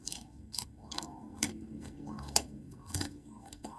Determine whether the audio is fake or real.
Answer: fake